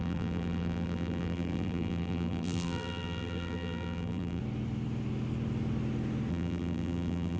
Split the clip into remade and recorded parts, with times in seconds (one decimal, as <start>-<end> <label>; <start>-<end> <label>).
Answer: 0.0-4.4 remade; 4.4-6.3 recorded; 6.3-7.4 remade